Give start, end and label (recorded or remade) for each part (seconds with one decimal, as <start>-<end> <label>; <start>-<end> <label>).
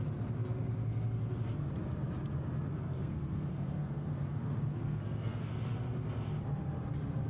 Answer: 0.0-2.7 recorded; 2.7-5.5 remade; 5.5-7.3 recorded